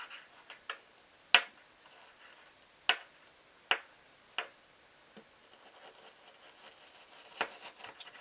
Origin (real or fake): real